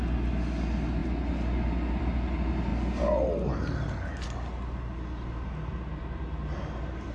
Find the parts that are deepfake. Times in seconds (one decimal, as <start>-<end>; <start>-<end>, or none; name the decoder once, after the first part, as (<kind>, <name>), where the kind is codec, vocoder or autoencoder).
none